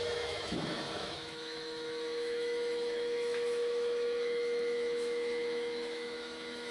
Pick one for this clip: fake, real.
fake